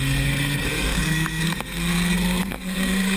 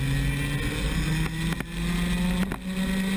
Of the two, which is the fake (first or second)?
first